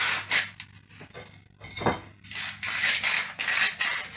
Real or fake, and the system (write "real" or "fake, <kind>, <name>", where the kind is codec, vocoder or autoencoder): real